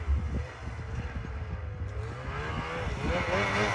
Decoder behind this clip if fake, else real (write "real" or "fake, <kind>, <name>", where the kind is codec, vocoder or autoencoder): real